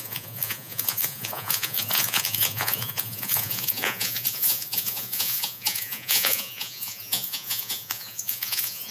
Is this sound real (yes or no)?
no